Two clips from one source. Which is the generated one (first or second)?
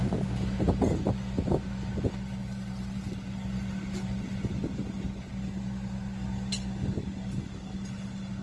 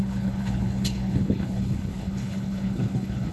second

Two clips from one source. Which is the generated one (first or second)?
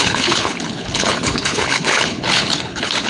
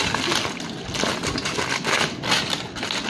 first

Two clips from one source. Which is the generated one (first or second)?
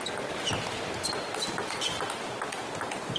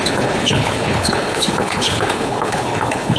second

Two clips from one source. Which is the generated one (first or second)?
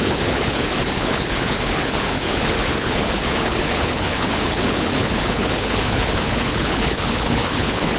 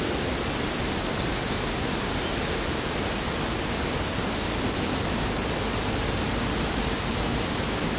first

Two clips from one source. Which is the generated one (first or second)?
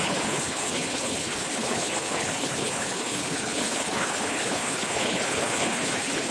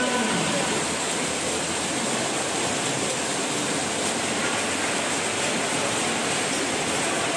first